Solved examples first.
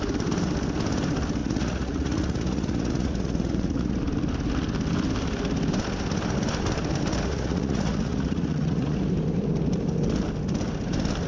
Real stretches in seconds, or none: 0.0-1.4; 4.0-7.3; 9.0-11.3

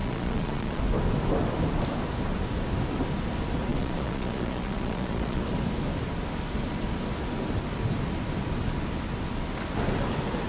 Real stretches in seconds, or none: 0.8-3.7; 5.4-10.5

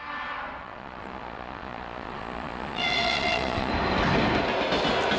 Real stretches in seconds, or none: 0.0-0.6; 3.7-5.2

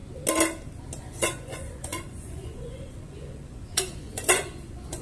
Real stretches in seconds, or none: 0.0-1.0

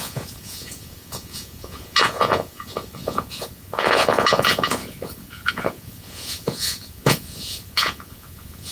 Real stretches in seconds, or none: none